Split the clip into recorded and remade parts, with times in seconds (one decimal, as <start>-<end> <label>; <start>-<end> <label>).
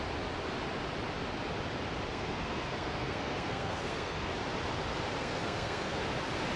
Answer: 0.0-2.1 recorded; 2.1-4.3 remade; 4.3-5.2 recorded; 5.2-6.0 remade; 6.0-6.6 recorded